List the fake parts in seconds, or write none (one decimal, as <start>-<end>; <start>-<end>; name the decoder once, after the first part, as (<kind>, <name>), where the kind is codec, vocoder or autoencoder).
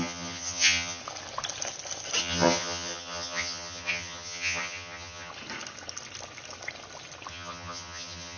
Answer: 0.0-1.0 (vocoder, HiFi-GAN); 2.2-5.3; 7.3-8.4